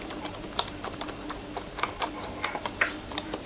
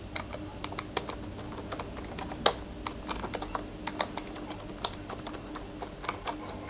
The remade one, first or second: first